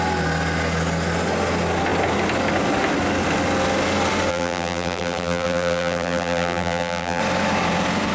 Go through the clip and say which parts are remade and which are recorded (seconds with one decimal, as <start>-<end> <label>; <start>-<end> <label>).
0.0-4.3 recorded; 4.3-7.2 remade; 7.2-8.1 recorded